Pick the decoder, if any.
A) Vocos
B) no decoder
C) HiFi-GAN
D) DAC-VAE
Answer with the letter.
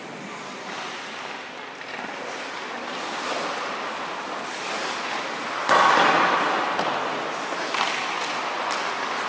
B